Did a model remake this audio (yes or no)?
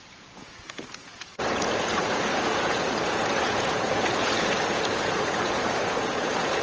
yes